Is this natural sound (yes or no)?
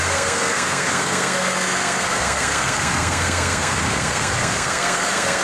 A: no